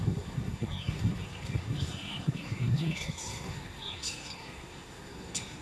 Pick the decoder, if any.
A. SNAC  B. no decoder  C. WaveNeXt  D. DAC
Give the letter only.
A